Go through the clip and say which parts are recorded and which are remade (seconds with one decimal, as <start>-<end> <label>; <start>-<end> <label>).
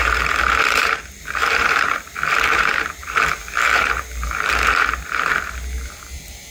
0.0-6.5 remade